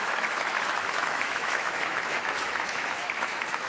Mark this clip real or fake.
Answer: fake